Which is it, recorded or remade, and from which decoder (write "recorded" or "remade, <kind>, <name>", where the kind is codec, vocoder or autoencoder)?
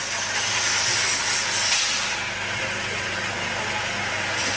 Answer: recorded